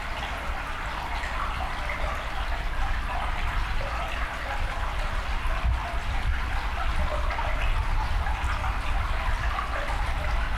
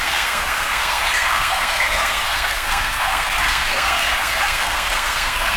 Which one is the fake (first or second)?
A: second